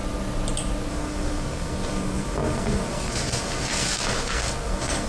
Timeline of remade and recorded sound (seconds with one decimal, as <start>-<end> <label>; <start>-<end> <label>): 0.0-0.9 recorded; 0.9-5.1 remade